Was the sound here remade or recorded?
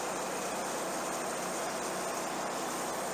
recorded